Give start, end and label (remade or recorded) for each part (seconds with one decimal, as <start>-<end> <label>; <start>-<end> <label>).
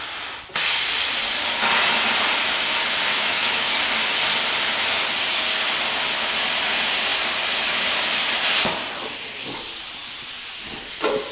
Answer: 0.0-3.1 recorded; 3.1-3.7 remade; 3.7-11.3 recorded